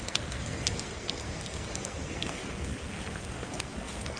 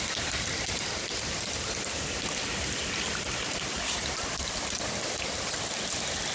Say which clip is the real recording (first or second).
second